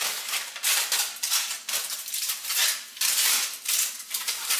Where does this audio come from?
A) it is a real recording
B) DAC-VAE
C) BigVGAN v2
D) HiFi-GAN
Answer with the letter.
C